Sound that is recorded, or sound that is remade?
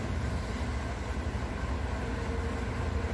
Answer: recorded